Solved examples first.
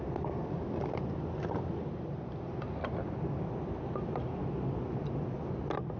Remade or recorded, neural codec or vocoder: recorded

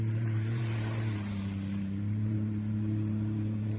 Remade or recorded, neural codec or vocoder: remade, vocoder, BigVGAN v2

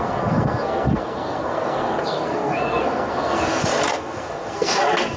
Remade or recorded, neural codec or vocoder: remade, codec, SNAC